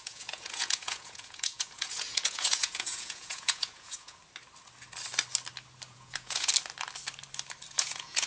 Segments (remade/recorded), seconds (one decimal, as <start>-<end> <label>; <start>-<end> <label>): 0.0-4.2 remade; 4.2-5.9 recorded; 5.9-6.5 remade; 6.5-7.7 recorded; 7.7-8.3 remade